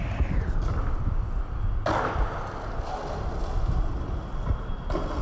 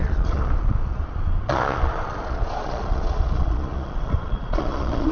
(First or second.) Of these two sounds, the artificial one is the second